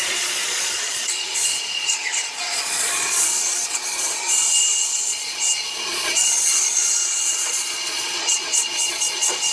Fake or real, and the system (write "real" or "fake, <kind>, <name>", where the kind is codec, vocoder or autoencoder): fake, vocoder, Vocos